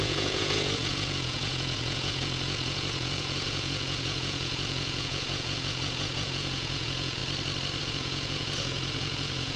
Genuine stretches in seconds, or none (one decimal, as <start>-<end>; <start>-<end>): 7.2-7.8